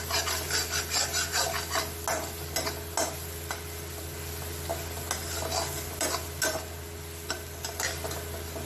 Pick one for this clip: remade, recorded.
recorded